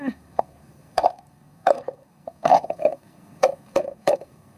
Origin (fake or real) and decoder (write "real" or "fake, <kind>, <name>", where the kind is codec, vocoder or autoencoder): fake, codec, SNAC